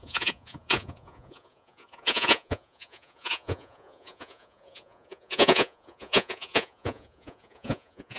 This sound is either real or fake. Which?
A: fake